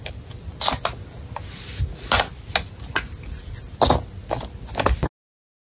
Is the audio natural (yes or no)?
yes